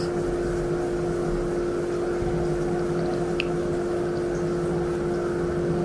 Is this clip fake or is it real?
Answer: real